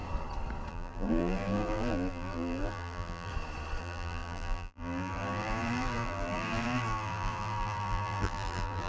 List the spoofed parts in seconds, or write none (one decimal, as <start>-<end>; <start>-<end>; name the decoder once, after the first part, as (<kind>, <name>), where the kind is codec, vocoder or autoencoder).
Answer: 0.7-3.3 (vocoder, BigVGAN v2); 3.8-8.9